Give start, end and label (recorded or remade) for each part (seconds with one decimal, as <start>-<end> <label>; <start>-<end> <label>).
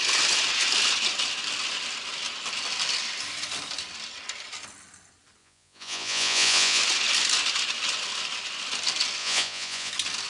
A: 0.0-5.4 recorded; 5.4-6.8 remade; 6.8-9.2 recorded; 9.2-9.9 remade; 9.9-10.3 recorded